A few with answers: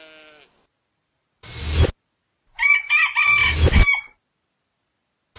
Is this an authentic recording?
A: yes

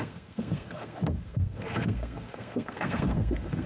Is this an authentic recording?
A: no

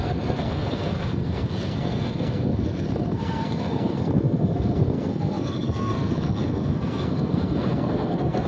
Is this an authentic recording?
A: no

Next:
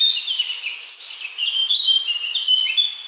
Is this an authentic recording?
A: yes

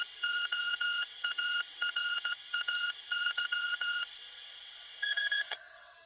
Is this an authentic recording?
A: no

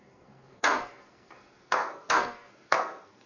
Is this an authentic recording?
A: no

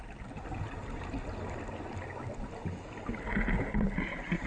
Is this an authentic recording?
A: yes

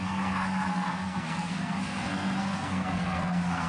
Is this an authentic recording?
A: no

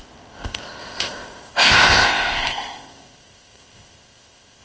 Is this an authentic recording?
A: no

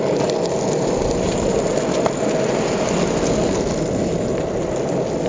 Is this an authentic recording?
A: yes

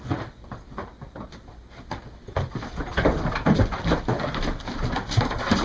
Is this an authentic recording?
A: yes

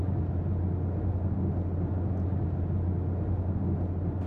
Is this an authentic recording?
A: yes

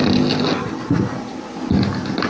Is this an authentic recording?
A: yes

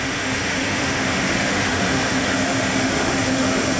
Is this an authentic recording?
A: no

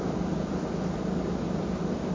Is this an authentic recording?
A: yes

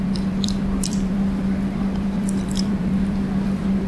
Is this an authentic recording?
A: no